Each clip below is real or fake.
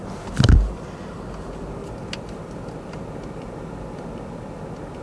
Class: real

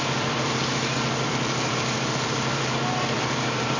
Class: fake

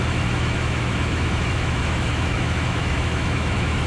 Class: fake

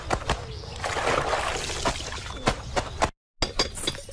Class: real